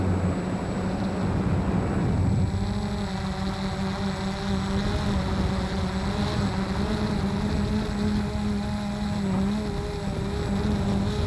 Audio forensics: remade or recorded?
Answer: recorded